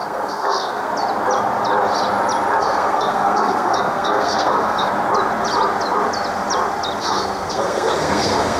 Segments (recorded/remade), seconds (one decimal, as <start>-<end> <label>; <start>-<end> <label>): 0.0-0.9 remade; 0.9-2.6 recorded; 2.6-4.9 remade; 4.9-7.0 recorded; 7.0-8.6 remade